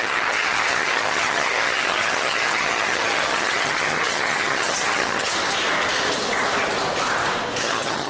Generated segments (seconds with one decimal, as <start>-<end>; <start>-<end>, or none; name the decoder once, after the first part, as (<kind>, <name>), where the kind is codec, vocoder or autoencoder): 0.0-5.3 (vocoder, HiFi-GAN); 7.6-8.1

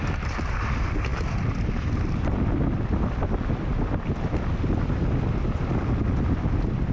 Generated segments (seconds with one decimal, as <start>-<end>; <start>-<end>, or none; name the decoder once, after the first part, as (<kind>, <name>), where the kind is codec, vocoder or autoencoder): none

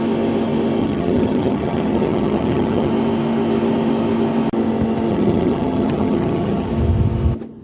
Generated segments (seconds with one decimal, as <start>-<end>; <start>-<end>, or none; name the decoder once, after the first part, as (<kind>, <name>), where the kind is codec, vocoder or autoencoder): 0.8-2.9 (vocoder, HiFi-GAN); 5.1-6.7

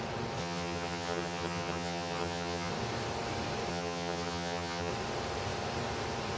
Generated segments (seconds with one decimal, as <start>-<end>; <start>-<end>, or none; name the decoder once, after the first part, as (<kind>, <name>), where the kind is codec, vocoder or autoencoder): 0.4-2.7 (vocoder, HiFi-GAN); 3.7-4.9

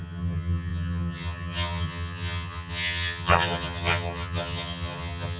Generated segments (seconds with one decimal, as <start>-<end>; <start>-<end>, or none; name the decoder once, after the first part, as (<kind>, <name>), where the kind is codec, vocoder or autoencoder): 0.0-5.4 (vocoder, HiFi-GAN)

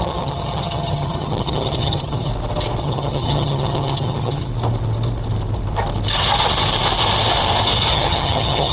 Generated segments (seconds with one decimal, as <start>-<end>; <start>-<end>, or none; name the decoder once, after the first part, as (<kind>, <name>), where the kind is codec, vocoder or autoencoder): 0.0-2.3 (vocoder, HiFi-GAN); 2.8-4.5; 7.9-8.7

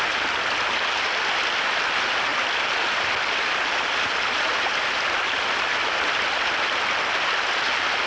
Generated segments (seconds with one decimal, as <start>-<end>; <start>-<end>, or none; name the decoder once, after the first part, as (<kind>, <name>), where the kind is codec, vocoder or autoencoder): none